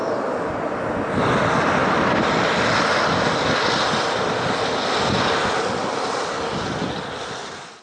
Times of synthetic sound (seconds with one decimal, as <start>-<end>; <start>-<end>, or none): none